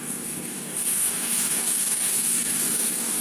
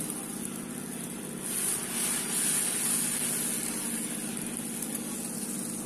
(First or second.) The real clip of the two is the second